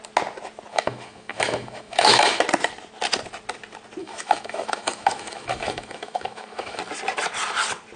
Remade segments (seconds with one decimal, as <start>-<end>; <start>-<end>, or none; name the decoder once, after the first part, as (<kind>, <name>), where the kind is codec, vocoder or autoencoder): 0.7-2.4 (autoencoder, DAC-VAE); 4.0-6.8

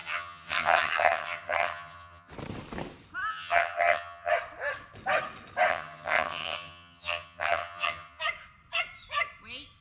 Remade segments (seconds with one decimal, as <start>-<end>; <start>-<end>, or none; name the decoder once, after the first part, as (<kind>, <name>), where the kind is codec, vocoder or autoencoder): 0.0-2.3 (vocoder, HiFi-GAN); 3.3-4.3; 5.7-8.2

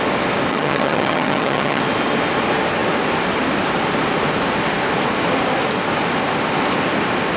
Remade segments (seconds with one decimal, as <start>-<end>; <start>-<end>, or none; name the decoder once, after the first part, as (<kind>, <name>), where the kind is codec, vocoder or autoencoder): 0.5-1.8 (vocoder, HiFi-GAN)

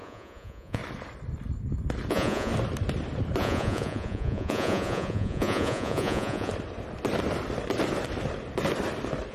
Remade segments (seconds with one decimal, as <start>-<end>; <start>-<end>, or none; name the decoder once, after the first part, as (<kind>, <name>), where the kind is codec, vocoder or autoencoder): 0.0-0.8 (vocoder, Vocos); 2.1-2.5; 3.4-6.5